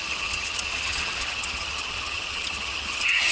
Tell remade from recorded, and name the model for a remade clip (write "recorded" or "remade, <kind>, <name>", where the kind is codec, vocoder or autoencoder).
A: remade, vocoder, HiFi-GAN